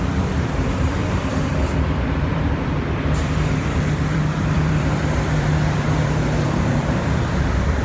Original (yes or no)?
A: no